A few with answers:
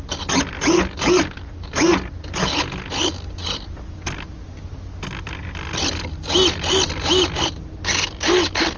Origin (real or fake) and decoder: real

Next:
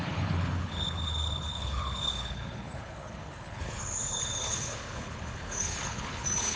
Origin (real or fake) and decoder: fake, codec, HILCodec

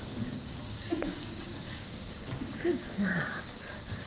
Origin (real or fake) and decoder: fake, codec, DAC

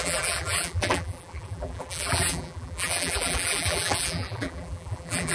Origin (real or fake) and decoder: fake, vocoder, BigVGAN v2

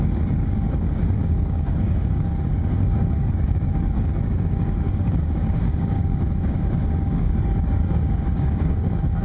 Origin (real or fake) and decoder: fake, codec, DAC